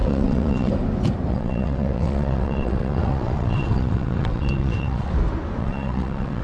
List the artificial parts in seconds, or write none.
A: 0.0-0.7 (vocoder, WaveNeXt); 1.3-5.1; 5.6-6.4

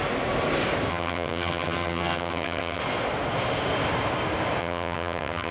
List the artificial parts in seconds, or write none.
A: 0.9-2.8 (vocoder, HiFi-GAN); 4.6-5.5

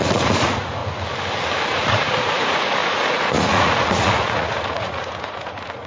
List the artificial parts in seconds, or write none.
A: 0.0-0.8 (vocoder, Vocos); 1.7-5.9

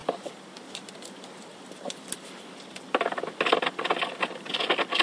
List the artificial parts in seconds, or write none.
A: none